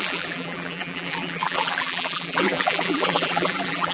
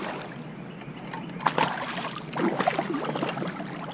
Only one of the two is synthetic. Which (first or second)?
first